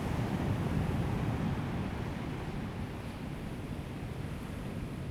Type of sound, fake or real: real